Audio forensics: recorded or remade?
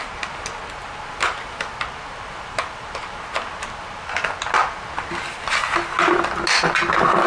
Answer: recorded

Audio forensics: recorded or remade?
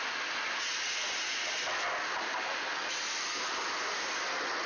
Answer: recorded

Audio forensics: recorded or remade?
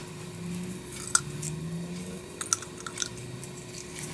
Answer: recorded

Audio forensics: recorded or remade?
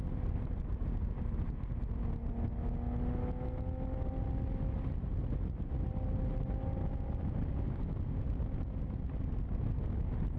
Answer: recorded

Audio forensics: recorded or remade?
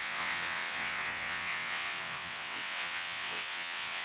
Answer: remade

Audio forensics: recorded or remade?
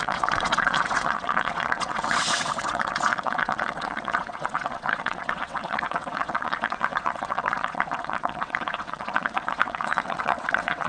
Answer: remade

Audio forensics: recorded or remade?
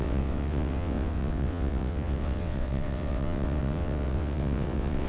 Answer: remade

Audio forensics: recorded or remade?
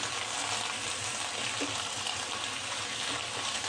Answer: recorded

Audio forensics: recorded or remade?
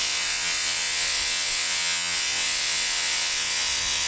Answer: remade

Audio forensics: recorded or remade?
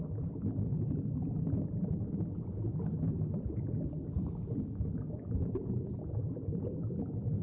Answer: recorded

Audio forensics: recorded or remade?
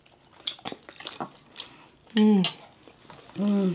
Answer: recorded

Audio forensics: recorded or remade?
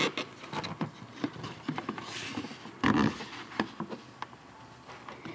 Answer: recorded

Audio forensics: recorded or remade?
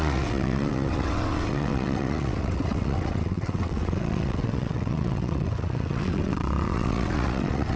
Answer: remade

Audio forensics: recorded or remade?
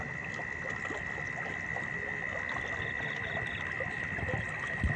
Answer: recorded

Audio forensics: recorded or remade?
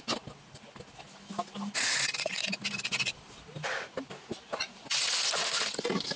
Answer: recorded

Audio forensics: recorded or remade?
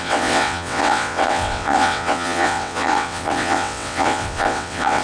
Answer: remade